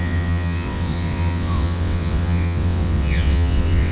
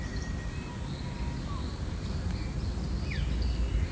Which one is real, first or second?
second